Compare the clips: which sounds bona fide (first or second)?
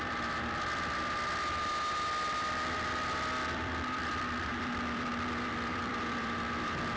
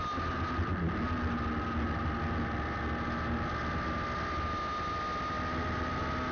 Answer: second